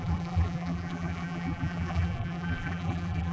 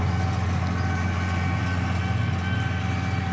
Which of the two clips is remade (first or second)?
first